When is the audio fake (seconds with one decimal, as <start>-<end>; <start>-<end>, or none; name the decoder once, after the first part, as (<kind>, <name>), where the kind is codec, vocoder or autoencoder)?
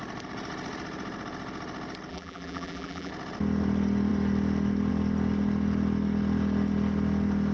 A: 2.1-3.1 (vocoder, BigVGAN v2)